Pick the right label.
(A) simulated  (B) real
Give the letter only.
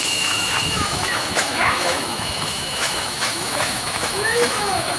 A